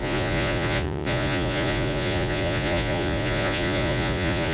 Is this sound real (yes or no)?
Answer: no